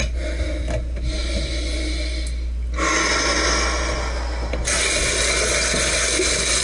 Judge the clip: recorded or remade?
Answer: recorded